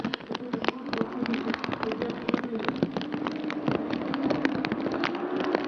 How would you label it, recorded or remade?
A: recorded